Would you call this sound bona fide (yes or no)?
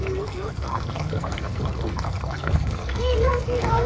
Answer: no